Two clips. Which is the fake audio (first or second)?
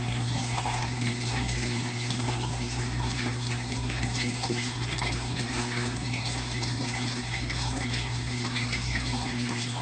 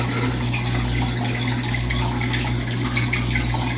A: first